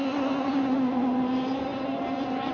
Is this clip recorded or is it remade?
recorded